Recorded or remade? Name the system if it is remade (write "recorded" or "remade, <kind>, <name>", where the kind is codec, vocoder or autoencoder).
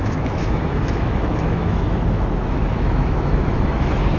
remade, autoencoder, DAC-VAE